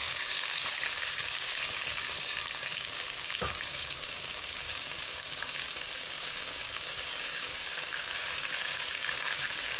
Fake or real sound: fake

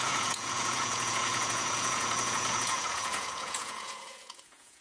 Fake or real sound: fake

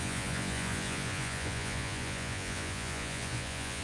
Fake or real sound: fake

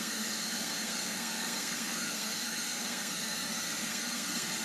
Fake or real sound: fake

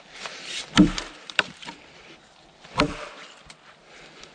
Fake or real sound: fake